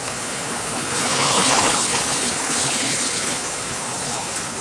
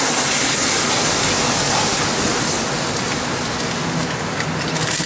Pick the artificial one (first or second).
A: first